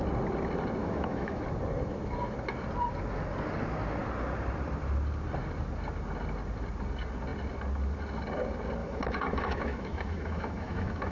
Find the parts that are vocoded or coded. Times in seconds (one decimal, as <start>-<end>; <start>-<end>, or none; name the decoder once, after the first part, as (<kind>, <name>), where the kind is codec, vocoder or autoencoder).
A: 0.8-1.4 (autoencoder, DAC-VAE); 8.8-11.1